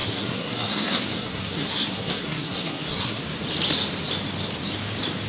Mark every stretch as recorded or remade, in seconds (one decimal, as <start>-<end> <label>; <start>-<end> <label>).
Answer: 0.0-3.2 remade; 3.2-5.3 recorded